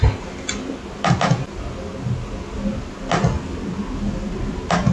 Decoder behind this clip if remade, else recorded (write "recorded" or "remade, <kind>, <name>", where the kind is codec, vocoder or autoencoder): recorded